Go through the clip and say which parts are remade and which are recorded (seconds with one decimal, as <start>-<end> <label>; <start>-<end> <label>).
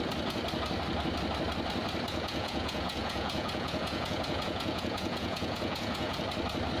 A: 0.0-2.1 recorded; 2.1-6.2 remade; 6.2-6.8 recorded